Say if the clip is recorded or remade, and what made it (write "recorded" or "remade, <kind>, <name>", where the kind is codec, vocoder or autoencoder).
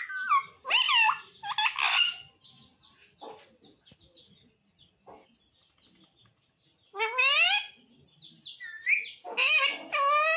recorded